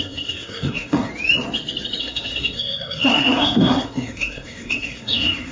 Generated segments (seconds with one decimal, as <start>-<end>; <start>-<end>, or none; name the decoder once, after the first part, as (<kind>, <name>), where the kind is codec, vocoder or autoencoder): 0.0-1.1 (codec, SNAC); 2.0-5.5